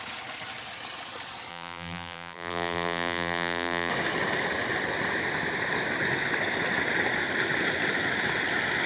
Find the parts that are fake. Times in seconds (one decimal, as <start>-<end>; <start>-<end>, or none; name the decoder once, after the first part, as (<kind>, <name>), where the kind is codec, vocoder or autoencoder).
1.5-3.9 (vocoder, BigVGAN v2)